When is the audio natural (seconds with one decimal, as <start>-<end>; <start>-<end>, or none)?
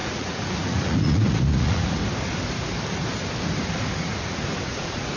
2.0-3.9